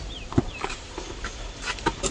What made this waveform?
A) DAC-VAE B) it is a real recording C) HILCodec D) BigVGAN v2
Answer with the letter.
B